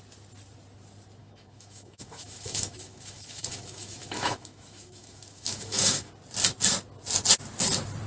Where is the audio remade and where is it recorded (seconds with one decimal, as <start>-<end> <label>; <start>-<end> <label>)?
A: 0.0-1.2 recorded; 1.2-6.1 remade; 6.1-8.1 recorded